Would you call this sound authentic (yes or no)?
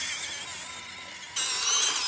yes